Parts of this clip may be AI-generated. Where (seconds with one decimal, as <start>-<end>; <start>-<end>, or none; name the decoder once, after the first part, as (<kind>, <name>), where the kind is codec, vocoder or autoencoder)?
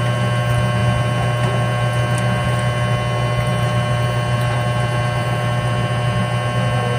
none